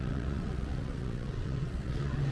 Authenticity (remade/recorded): remade